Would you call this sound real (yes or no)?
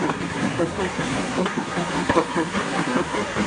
no